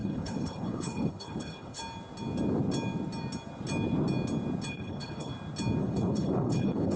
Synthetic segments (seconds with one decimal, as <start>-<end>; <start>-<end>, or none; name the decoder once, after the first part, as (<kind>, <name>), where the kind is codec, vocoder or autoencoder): 0.0-1.8 (codec, HILCodec); 4.7-5.3; 5.8-7.0